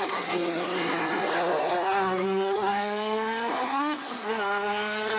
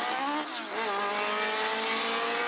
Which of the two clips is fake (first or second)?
first